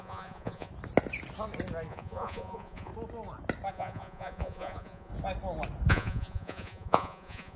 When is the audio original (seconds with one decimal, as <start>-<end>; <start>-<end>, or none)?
0.7-1.9; 2.9-3.7; 5.1-5.9